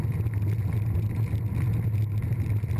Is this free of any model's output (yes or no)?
yes